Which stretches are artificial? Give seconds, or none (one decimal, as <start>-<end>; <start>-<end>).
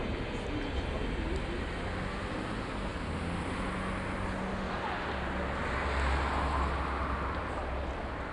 none